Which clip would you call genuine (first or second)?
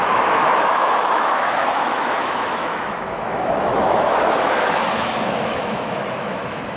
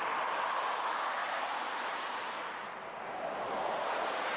second